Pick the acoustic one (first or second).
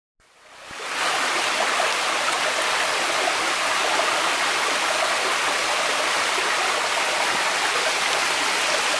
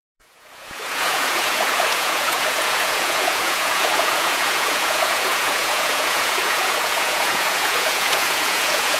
first